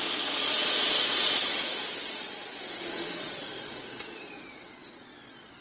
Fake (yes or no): yes